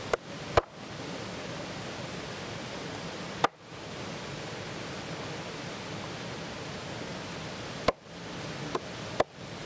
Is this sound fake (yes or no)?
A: no